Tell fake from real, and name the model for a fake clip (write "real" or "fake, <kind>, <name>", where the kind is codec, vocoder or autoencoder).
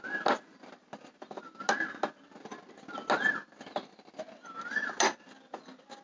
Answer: real